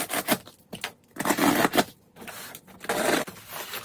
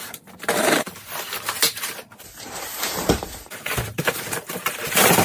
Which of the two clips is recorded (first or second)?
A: first